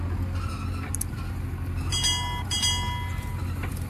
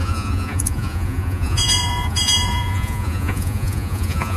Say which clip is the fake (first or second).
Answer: second